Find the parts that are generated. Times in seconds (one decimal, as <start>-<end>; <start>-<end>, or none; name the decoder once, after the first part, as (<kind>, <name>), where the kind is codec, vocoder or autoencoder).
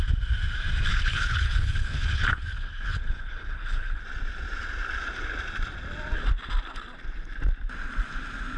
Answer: 0.9-4.0 (codec, HILCodec)